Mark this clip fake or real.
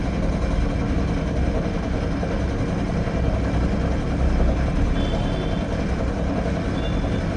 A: real